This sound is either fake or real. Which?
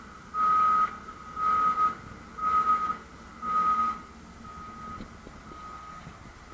real